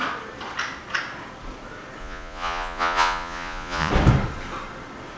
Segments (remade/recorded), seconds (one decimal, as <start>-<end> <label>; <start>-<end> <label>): 0.0-2.0 recorded; 2.0-3.9 remade; 3.9-5.2 recorded